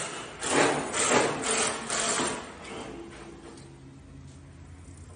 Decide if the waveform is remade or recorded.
recorded